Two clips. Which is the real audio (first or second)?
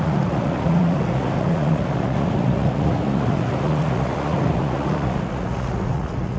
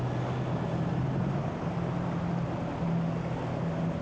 second